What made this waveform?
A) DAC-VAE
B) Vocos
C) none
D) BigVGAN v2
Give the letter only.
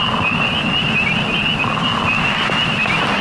C